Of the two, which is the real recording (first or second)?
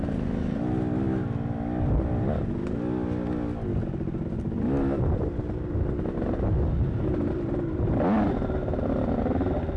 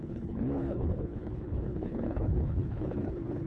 first